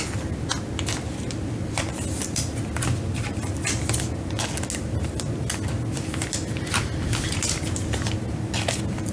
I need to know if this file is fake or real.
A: real